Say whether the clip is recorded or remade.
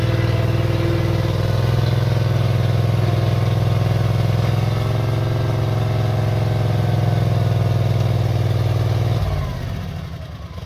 recorded